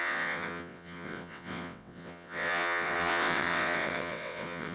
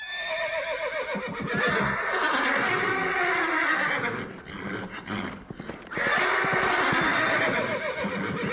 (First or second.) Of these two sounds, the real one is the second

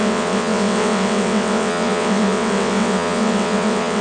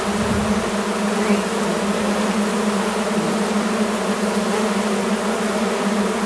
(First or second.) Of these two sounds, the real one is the second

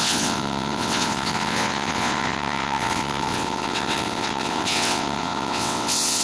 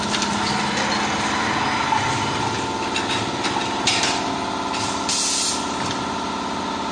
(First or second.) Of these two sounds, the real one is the second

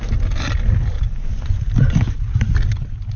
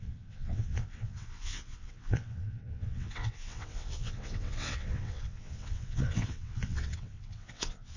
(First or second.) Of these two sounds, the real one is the first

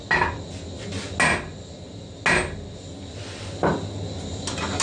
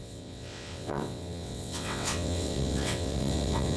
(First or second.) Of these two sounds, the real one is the first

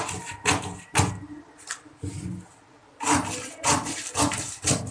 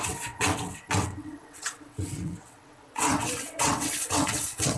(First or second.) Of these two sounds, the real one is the first